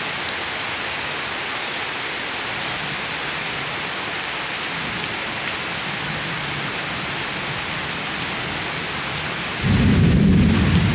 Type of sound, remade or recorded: recorded